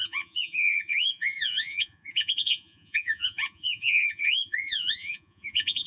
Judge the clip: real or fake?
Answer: fake